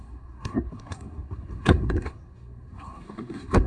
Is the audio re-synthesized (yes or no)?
yes